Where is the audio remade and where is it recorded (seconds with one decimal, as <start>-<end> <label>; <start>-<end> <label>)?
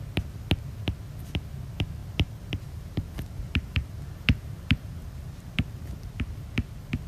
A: 0.0-2.0 recorded; 2.0-6.2 remade; 6.2-7.1 recorded